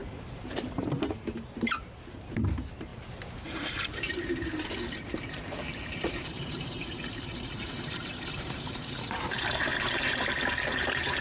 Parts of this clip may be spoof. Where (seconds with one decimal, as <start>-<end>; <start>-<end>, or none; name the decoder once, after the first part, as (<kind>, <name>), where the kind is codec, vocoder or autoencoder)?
0.0-11.2 (vocoder, BigVGAN v2)